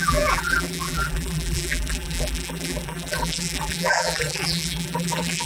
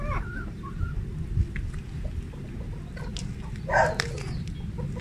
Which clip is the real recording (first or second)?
second